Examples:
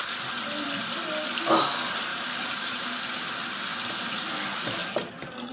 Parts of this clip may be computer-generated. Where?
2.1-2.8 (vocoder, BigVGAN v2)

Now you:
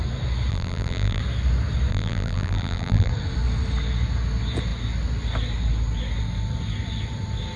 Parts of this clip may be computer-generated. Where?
0.5-1.2 (vocoder, BigVGAN v2); 1.9-3.1

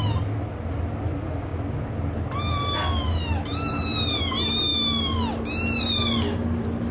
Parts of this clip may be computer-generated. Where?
none

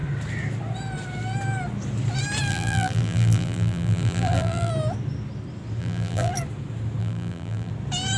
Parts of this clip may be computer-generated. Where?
2.5-4.7 (vocoder, BigVGAN v2); 5.8-6.3; 7.0-7.7

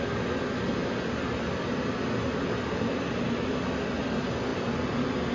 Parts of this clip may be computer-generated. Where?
none

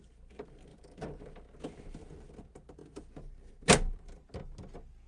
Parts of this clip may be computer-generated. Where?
0.7-1.3 (vocoder, BigVGAN v2)

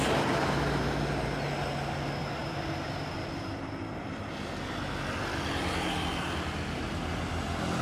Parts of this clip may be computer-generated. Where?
2.4-4.2 (vocoder, BigVGAN v2)

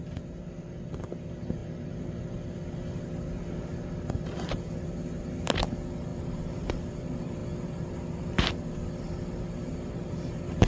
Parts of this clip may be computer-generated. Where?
1.6-2.3 (vocoder, BigVGAN v2)